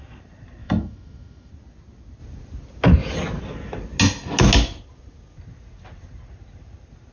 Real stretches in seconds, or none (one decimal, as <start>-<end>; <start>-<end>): 0.0-0.6; 1.5-7.1